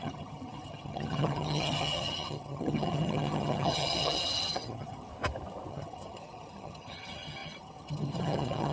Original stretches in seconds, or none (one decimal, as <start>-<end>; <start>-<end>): 5.1-5.7